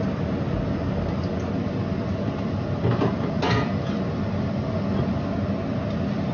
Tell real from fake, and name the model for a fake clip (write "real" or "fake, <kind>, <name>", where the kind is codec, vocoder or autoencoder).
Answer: real